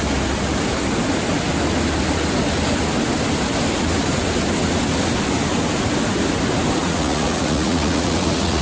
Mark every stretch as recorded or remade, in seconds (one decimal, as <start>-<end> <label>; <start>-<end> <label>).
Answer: 0.0-6.8 recorded; 6.8-8.6 remade

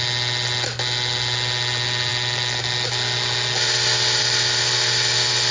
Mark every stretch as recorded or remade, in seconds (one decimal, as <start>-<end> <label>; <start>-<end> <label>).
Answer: 0.0-5.5 recorded

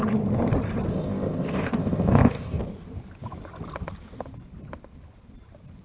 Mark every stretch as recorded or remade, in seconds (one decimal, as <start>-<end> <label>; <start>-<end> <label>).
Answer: 0.0-0.9 recorded; 0.9-2.6 remade; 2.6-5.8 recorded

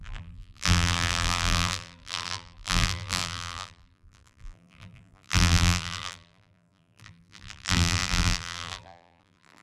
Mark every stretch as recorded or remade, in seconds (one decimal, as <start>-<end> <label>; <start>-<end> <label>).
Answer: 0.0-9.6 remade

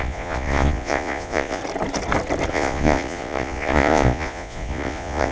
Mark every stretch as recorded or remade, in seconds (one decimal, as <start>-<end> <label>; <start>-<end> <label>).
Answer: 0.0-1.6 remade; 1.6-2.5 recorded; 2.5-5.3 remade

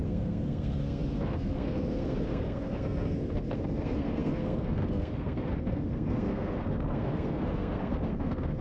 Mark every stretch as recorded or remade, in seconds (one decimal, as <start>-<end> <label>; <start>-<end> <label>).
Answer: 0.0-8.6 remade